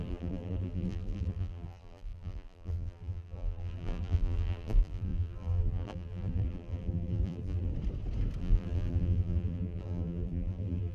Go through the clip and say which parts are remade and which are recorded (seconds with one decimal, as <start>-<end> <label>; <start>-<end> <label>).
0.0-7.7 remade; 7.7-8.4 recorded; 8.4-10.9 remade